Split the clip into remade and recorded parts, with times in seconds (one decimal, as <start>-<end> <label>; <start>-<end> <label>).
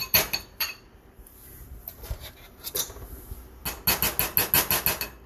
0.0-3.1 remade; 3.1-5.3 recorded